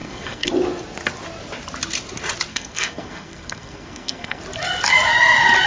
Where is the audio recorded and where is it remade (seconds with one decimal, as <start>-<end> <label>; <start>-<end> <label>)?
0.0-0.5 remade; 0.5-2.5 recorded; 2.5-4.4 remade; 4.4-5.7 recorded